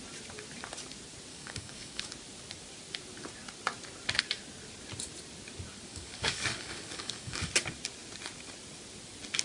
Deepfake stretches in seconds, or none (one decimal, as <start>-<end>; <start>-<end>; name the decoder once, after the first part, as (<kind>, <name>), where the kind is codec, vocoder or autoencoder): 1.3-2.1 (codec, DAC); 5.9-7.5